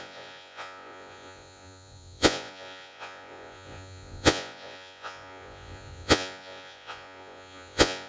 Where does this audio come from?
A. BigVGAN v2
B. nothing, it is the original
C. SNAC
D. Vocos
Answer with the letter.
D